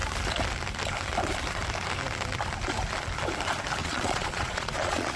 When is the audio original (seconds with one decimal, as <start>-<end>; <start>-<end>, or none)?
0.0-3.8